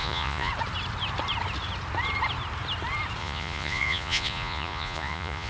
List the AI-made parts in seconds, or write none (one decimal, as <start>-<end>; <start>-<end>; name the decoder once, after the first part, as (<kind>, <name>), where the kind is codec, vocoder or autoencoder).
0.0-0.5 (vocoder, Vocos); 3.2-5.5